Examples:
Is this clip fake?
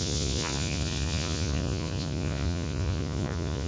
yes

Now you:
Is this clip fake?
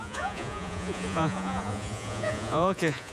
yes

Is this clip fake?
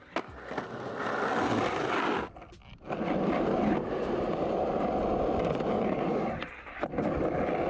no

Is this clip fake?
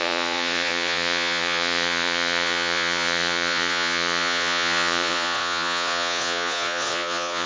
yes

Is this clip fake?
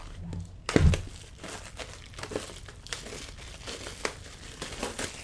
no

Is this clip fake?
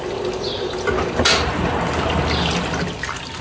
no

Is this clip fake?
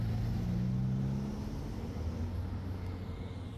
no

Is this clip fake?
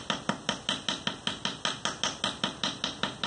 no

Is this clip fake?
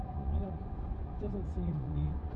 yes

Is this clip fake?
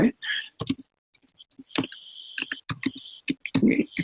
no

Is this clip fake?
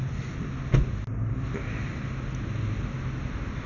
no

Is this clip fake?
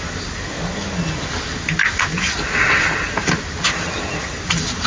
no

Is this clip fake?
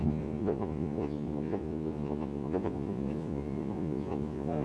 yes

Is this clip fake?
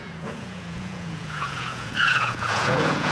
yes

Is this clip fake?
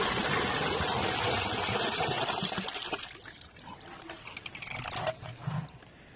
no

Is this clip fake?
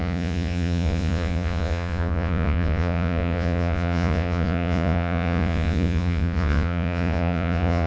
yes